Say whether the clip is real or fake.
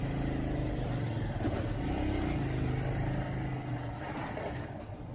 real